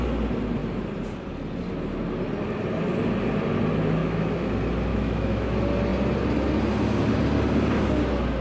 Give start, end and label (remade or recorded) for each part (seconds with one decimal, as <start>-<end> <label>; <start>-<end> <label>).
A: 0.0-4.0 recorded; 4.0-4.5 remade; 4.5-4.9 recorded; 4.9-5.5 remade; 5.5-8.4 recorded